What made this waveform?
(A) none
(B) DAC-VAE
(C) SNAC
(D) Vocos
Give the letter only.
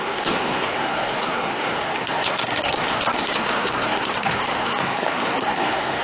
C